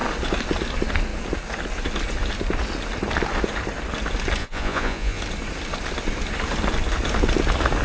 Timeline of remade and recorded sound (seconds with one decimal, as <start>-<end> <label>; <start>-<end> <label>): 0.0-4.4 recorded; 4.4-5.2 remade; 5.2-7.8 recorded